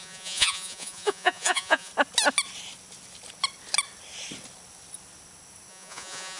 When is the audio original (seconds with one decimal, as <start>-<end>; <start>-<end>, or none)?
1.9-5.7